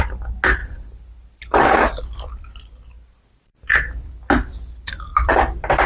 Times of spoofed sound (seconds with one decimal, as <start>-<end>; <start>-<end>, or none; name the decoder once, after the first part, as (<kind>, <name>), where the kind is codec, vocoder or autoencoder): 0.6-4.1 (vocoder, BigVGAN v2); 5.1-5.9